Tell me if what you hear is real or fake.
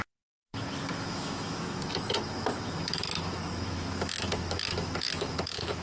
fake